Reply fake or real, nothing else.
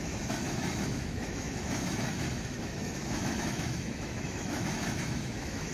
fake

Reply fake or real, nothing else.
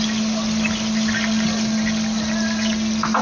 real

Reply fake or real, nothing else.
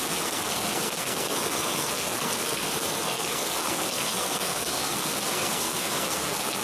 fake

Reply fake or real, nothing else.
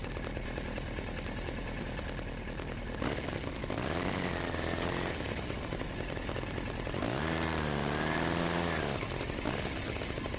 real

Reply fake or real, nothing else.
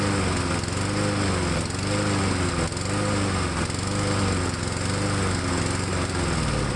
real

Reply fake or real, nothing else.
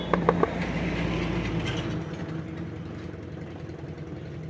real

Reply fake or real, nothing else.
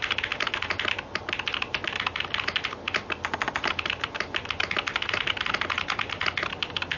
real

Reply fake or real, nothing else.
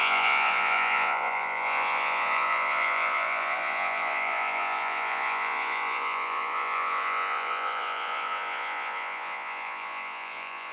fake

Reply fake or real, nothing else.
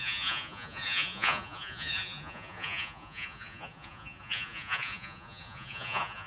fake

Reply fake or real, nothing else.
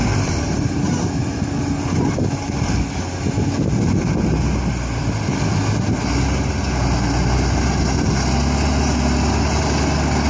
real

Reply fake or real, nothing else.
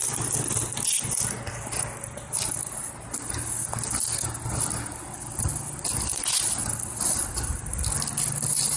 real